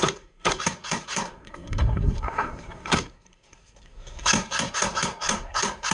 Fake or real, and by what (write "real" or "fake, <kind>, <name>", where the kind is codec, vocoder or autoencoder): fake, codec, SNAC